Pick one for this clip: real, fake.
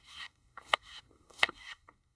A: fake